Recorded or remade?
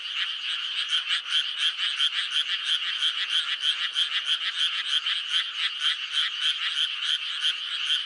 recorded